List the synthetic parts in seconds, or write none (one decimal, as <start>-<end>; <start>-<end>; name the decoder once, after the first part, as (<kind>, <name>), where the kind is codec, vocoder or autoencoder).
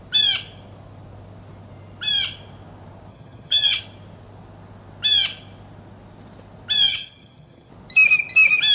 3.1-3.8 (vocoder, HiFi-GAN); 6.9-7.7